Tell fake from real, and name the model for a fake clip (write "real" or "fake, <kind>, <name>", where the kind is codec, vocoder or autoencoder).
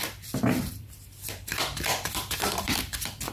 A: fake, vocoder, BigVGAN v2